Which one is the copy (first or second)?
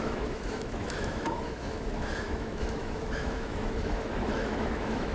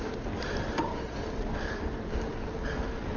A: first